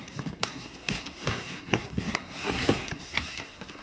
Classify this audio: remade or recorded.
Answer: remade